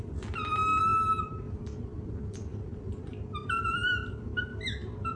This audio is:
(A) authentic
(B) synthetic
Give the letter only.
A